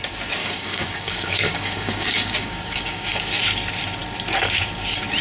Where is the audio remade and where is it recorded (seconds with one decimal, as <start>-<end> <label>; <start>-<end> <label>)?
0.0-0.4 recorded; 0.4-3.4 remade; 3.4-5.2 recorded